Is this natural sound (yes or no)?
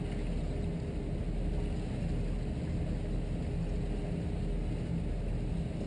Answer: yes